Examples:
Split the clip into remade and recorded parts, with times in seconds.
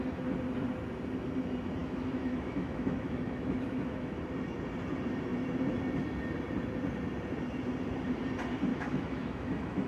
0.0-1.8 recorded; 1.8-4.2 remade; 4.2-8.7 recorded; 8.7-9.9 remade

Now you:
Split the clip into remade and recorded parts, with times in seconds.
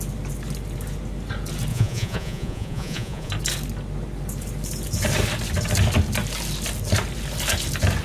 0.0-1.7 recorded; 1.7-3.3 remade; 3.3-8.0 recorded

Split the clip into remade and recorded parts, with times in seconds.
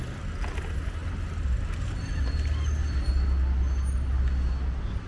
0.0-5.1 recorded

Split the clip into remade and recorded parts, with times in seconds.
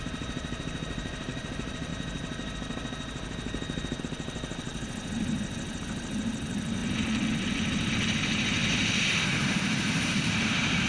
0.0-1.9 remade; 1.9-4.0 recorded; 4.0-4.7 remade; 4.7-6.0 recorded; 6.0-6.8 remade; 6.8-7.3 recorded; 7.3-10.9 remade